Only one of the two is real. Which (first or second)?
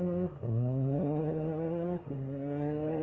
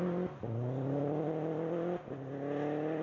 second